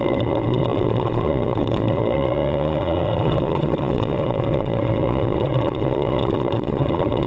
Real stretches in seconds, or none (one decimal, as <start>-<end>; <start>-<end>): none